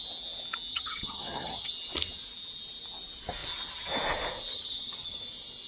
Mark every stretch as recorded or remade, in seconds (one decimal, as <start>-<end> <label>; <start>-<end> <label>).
0.0-0.7 recorded; 0.7-1.7 remade; 1.7-4.5 recorded; 4.5-5.2 remade; 5.2-5.7 recorded